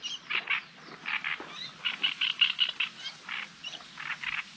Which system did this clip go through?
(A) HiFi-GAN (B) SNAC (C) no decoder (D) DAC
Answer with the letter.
C